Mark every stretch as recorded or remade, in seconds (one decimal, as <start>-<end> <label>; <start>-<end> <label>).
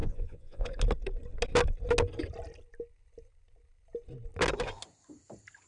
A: 0.0-0.7 remade; 0.7-5.7 recorded